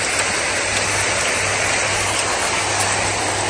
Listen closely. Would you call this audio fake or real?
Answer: real